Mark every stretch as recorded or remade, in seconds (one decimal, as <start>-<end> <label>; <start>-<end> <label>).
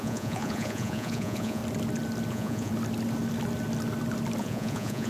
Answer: 0.0-1.6 remade; 1.6-2.3 recorded; 2.3-2.7 remade; 2.7-4.4 recorded; 4.4-5.1 remade